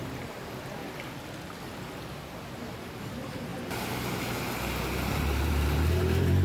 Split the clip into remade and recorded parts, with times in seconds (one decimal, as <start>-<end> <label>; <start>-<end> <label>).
0.0-0.8 remade; 0.8-2.3 recorded; 2.3-3.5 remade; 3.5-5.0 recorded; 5.0-6.4 remade